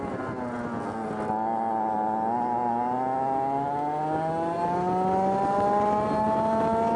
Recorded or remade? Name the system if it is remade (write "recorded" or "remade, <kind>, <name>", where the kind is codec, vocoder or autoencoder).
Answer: recorded